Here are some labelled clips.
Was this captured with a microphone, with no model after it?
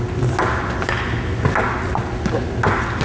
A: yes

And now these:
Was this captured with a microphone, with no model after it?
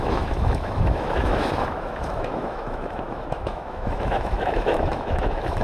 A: no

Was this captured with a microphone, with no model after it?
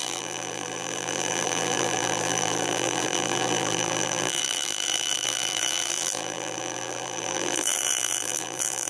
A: no